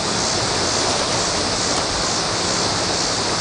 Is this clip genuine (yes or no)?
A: yes